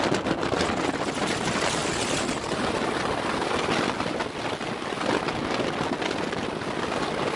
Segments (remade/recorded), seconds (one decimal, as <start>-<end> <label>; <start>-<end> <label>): 0.0-7.4 recorded